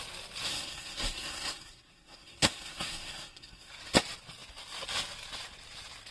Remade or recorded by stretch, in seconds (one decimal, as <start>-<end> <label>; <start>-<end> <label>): 0.0-0.5 recorded; 0.5-3.7 remade; 3.7-6.1 recorded